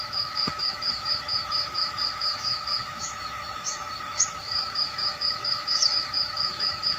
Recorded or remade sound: remade